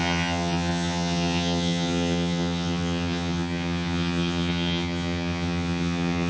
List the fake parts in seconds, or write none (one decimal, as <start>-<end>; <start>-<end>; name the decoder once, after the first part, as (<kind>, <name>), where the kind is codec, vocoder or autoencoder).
0.0-6.3 (vocoder, HiFi-GAN)